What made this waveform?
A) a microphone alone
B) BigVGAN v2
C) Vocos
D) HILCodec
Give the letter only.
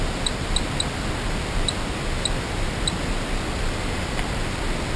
A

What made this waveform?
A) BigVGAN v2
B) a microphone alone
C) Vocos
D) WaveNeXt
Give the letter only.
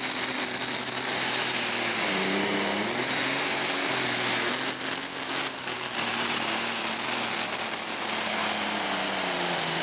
B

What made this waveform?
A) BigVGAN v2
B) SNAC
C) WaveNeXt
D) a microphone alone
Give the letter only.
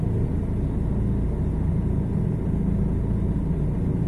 D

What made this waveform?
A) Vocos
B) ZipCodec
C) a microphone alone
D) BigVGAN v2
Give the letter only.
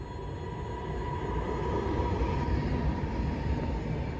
C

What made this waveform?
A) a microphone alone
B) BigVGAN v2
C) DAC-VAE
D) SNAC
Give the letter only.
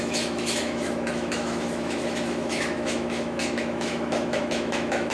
C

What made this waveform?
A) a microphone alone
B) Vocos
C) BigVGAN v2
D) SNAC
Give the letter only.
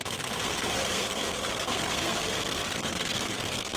D